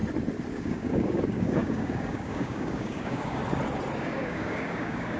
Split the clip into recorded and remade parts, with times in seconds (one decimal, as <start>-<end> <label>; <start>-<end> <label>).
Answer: 0.0-0.5 recorded; 0.5-3.4 remade; 3.4-4.0 recorded; 4.0-5.2 remade